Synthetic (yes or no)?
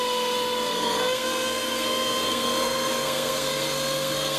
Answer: yes